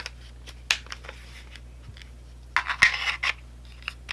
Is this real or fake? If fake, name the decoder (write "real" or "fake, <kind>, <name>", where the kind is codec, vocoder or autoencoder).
real